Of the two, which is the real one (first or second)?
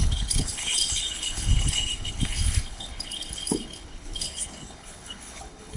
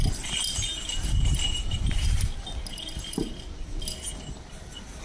second